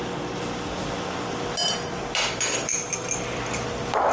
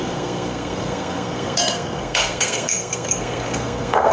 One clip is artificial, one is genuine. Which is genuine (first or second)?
first